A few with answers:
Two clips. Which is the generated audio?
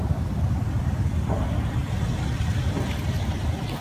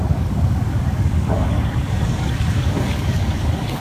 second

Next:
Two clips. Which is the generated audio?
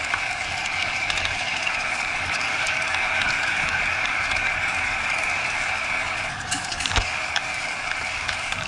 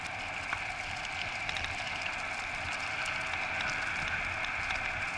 first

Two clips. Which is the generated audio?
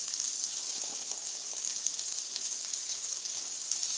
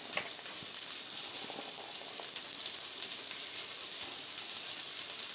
first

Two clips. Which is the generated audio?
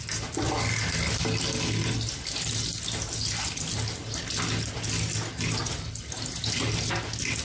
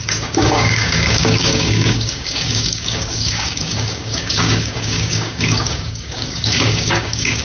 second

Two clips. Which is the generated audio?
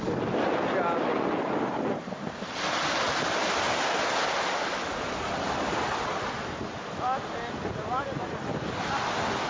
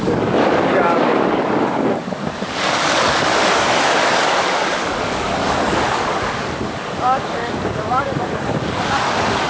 second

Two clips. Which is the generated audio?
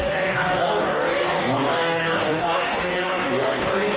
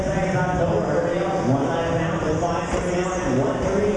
first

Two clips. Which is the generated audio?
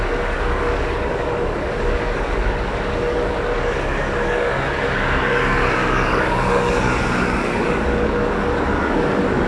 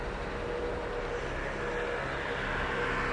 first